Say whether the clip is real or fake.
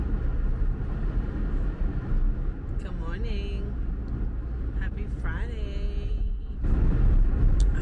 real